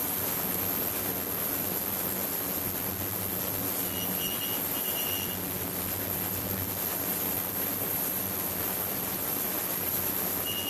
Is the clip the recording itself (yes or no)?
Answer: yes